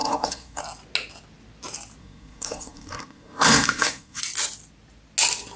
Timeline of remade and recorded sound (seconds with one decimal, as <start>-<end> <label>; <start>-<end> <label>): 0.0-0.6 remade; 0.6-2.0 recorded; 2.0-4.2 remade; 4.2-5.6 recorded